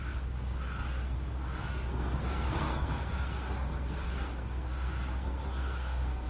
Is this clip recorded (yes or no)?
no